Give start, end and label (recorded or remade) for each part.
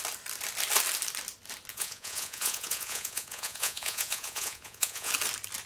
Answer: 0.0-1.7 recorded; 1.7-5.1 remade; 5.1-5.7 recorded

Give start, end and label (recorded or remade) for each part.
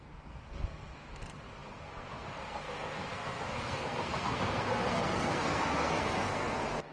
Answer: 0.0-6.9 remade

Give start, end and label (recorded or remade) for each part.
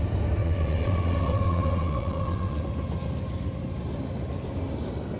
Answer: 0.0-0.4 recorded; 0.4-2.6 remade; 2.6-5.2 recorded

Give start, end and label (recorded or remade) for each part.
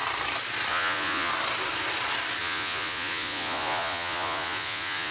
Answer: 0.0-0.7 recorded; 0.7-1.3 remade; 1.3-2.4 recorded; 2.4-5.1 remade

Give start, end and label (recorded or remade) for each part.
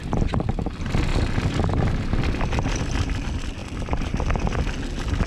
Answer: 0.0-5.3 recorded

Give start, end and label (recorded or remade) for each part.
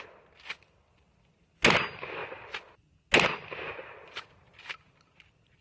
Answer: 0.0-5.6 recorded